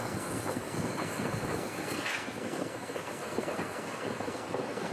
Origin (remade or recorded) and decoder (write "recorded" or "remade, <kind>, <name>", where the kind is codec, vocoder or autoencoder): remade, codec, SNAC